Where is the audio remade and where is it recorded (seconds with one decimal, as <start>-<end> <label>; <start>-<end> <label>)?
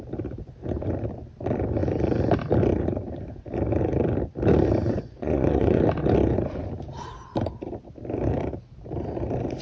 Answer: 0.0-4.8 recorded; 4.8-5.8 remade; 5.8-9.6 recorded